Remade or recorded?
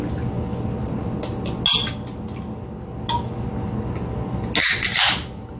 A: recorded